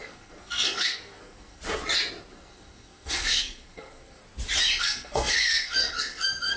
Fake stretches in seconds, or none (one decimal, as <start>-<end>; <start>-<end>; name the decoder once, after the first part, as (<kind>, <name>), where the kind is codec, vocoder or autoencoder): 0.0-1.6 (codec, SNAC); 2.3-4.2; 4.8-6.6